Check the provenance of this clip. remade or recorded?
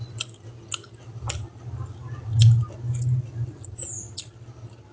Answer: recorded